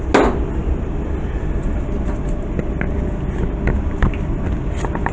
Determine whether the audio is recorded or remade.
recorded